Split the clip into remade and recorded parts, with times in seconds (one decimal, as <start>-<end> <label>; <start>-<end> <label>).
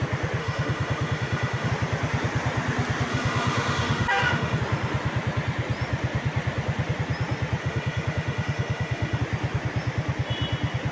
0.0-0.4 recorded; 0.4-1.7 remade; 1.7-3.1 recorded; 3.1-4.6 remade; 4.6-7.6 recorded; 7.6-9.2 remade; 9.2-10.9 recorded